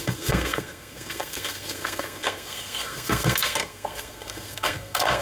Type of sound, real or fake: fake